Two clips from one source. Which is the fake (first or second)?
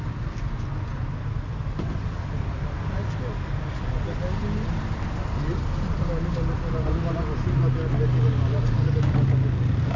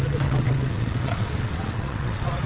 second